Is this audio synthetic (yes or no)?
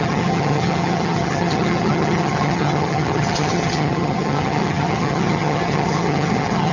yes